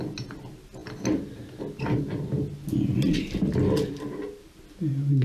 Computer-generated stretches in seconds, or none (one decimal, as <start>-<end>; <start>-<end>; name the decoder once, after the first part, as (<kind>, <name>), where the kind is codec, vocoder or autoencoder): none